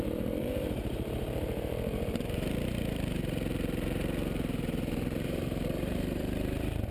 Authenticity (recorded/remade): remade